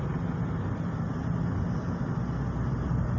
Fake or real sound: real